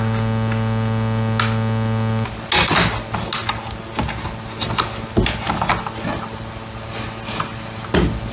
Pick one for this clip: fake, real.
real